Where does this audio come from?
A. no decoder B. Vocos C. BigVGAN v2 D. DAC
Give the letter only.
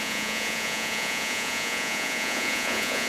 B